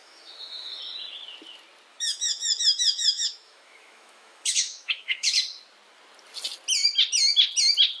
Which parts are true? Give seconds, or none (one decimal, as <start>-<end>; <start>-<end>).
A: 0.8-1.9; 5.4-8.0